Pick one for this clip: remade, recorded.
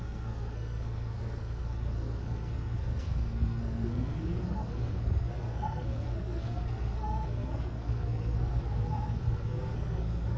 remade